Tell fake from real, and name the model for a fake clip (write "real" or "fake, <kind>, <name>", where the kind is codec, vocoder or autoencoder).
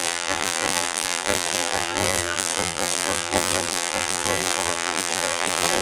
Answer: fake, vocoder, BigVGAN v2